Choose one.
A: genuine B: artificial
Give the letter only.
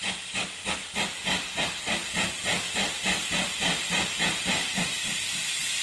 A